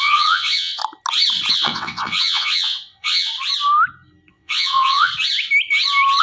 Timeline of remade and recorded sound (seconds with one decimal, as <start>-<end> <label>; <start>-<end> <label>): 0.0-0.8 remade; 0.8-1.5 recorded; 1.5-3.3 remade; 3.3-4.3 recorded; 4.3-5.1 remade; 5.1-6.2 recorded